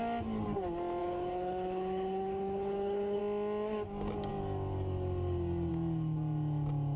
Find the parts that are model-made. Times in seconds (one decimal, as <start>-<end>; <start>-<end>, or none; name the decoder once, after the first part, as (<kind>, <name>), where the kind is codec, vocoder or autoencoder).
1.0-3.2 (codec, HILCodec)